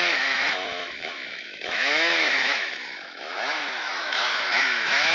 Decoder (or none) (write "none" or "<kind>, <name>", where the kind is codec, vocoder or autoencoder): autoencoder, DAC-VAE